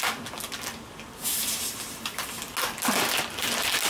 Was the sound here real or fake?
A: real